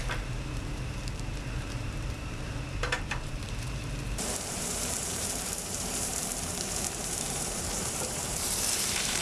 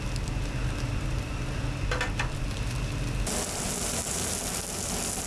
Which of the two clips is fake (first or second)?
first